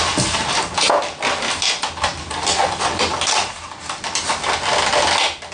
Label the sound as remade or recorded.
recorded